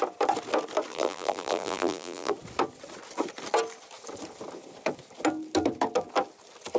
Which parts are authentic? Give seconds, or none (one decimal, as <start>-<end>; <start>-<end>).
0.0-0.9; 2.3-6.8

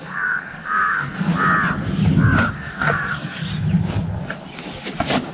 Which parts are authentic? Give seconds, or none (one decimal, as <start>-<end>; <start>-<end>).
1.3-2.5; 3.5-5.3

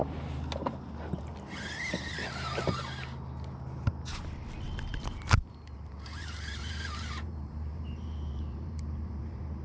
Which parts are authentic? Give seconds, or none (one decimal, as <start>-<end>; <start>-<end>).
0.0-4.9

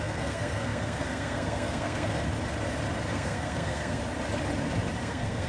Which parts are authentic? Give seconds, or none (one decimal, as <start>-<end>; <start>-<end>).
2.3-3.1; 4.0-5.0

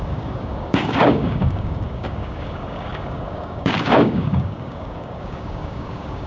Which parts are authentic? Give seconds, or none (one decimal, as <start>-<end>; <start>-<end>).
none

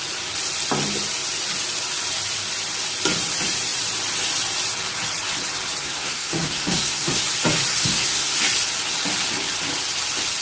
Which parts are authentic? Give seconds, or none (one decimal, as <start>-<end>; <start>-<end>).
0.0-5.8; 7.2-7.7; 8.4-10.4